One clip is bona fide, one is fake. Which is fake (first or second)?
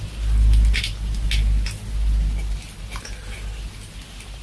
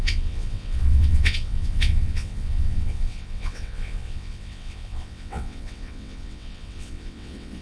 second